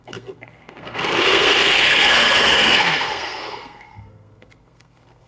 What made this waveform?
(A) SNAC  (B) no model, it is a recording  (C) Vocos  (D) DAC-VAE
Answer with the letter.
A